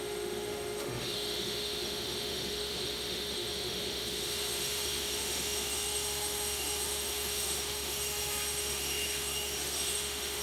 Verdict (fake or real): fake